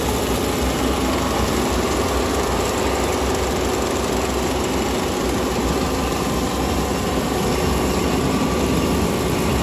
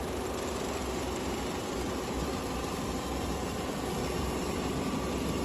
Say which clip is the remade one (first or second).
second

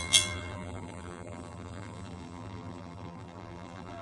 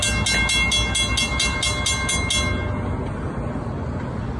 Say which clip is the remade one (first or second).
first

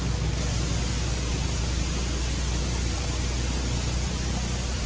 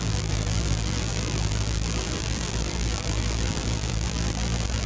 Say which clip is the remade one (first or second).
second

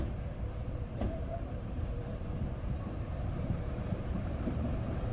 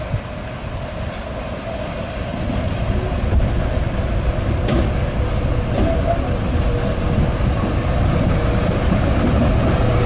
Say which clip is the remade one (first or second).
first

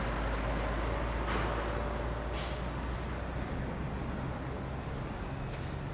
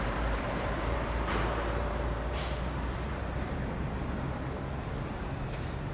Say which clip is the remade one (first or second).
second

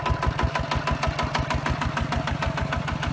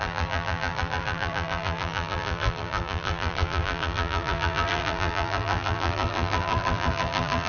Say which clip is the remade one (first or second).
second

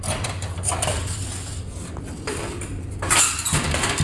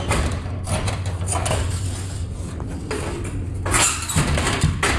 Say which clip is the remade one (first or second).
first